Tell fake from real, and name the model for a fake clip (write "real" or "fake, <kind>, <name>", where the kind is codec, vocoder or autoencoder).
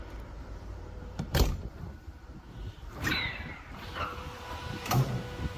fake, vocoder, BigVGAN v2